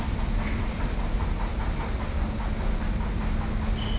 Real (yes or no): yes